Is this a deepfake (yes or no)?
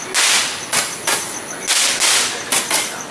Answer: no